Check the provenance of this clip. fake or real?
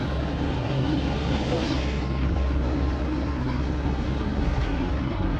fake